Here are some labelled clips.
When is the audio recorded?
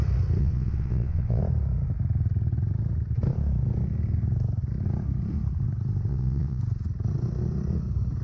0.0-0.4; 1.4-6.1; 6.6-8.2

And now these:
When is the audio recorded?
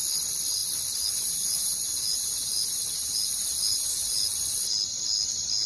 0.0-5.7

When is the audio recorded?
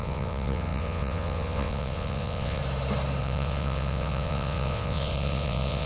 2.6-3.2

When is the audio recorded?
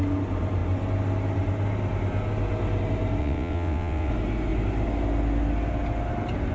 0.0-3.2; 4.1-6.5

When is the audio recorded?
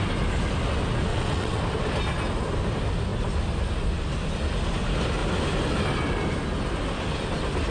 0.0-1.1; 1.6-7.7